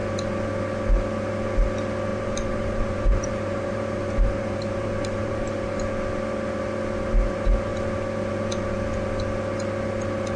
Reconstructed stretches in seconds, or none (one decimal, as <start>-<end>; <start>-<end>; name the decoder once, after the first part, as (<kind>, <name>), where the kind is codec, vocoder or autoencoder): 2.1-5.8 (vocoder, BigVGAN v2)